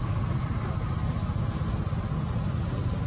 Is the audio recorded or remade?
recorded